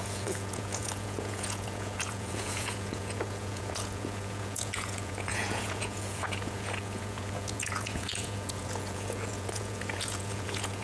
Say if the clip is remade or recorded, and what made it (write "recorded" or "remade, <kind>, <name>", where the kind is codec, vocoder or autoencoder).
remade, vocoder, Vocos